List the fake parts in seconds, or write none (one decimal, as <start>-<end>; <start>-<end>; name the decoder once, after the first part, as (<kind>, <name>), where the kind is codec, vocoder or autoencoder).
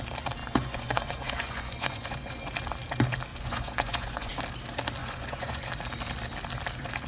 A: 0.4-2.4 (vocoder, Vocos); 3.3-4.3; 5.0-5.7